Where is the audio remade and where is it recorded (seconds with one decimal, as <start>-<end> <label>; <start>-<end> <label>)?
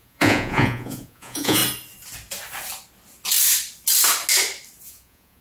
0.0-1.6 remade; 1.6-4.8 recorded; 4.8-5.4 remade